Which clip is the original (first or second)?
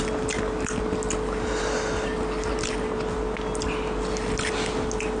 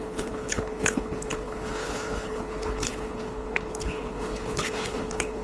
first